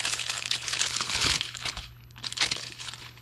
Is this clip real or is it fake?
fake